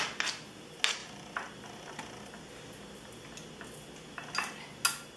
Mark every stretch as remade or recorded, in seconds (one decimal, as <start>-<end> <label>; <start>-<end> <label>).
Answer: 0.0-5.2 recorded